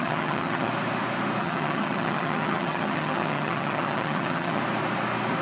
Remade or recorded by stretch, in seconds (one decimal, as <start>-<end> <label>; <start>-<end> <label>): 0.0-0.7 remade; 0.7-1.4 recorded; 1.4-4.6 remade; 4.6-5.4 recorded